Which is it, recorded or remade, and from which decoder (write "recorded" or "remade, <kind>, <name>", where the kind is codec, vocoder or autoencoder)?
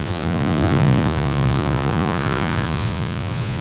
remade, vocoder, Vocos